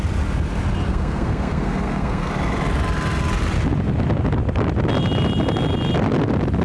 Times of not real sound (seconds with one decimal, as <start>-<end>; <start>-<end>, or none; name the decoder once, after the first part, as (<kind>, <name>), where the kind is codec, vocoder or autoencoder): 0.9-2.3 (codec, SNAC)